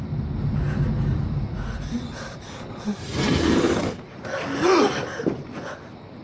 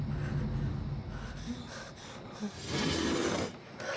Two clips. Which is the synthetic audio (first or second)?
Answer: first